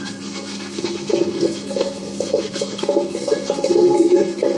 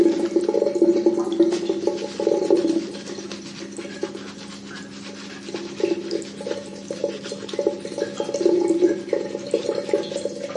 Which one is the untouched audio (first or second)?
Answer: second